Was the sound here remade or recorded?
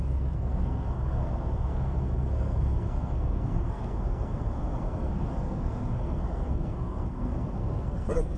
remade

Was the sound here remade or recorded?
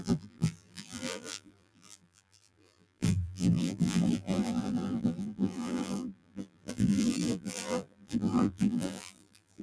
remade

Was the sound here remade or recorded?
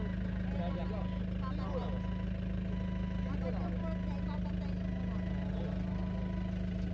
recorded